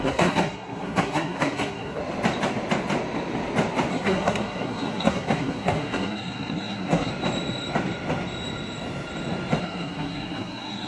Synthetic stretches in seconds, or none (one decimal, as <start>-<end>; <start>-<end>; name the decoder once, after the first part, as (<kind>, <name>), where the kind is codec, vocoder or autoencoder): 0.0-2.0 (codec, SNAC); 3.9-7.1; 9.6-10.9